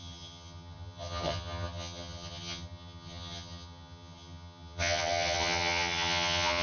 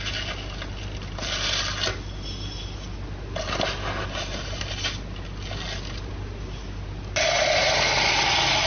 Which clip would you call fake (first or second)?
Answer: first